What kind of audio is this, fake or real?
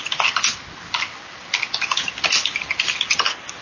real